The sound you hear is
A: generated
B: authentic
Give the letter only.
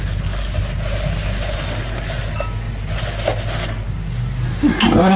B